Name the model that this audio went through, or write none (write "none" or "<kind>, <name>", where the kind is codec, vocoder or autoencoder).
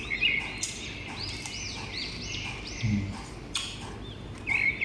none